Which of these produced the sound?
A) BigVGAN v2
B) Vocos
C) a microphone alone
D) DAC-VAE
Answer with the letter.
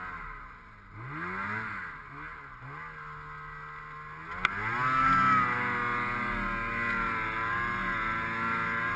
C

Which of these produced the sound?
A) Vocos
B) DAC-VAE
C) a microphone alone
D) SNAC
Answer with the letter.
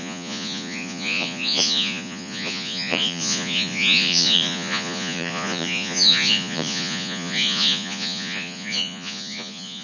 A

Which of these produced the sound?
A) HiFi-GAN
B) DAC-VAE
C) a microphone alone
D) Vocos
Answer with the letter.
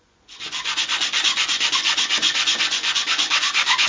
D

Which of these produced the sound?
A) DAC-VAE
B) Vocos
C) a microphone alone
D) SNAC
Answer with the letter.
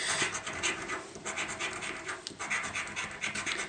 C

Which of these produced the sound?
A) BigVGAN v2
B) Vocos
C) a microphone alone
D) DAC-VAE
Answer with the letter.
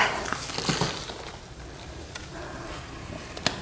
C